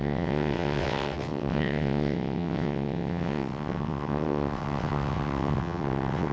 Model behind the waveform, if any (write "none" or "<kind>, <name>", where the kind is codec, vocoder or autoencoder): vocoder, WaveNeXt